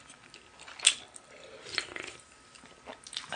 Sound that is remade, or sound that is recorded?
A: recorded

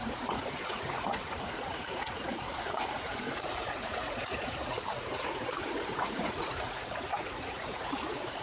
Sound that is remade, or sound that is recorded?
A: remade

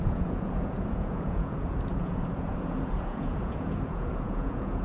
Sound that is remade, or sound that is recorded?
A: remade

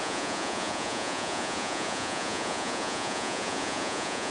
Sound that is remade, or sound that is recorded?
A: remade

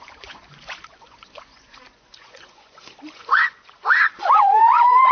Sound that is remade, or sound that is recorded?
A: remade